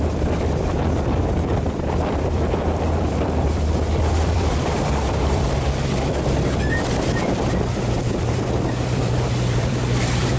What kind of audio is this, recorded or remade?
remade